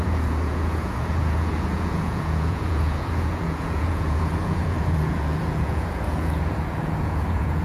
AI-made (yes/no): yes